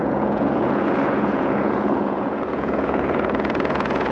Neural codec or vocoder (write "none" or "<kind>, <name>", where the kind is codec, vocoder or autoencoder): vocoder, Vocos